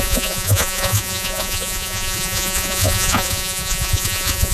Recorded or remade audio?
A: remade